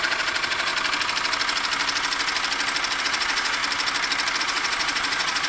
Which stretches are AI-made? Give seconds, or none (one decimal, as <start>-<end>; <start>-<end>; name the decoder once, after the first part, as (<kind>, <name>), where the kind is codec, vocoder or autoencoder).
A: 0.0-0.7 (vocoder, Vocos); 3.0-3.6; 4.4-5.5